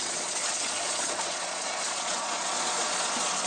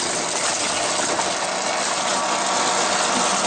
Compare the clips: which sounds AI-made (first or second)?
first